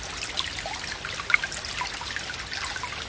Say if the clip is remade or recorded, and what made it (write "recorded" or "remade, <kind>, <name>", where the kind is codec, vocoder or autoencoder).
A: recorded